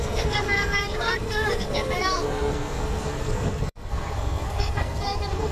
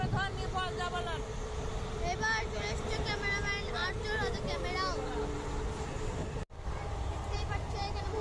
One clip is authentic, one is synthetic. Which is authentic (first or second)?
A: second